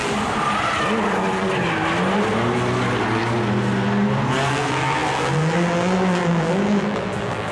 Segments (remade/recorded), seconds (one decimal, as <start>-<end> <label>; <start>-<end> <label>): 0.0-4.5 recorded; 4.5-7.5 remade